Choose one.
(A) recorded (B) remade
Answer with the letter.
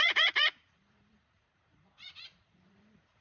B